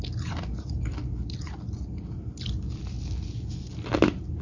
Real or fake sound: real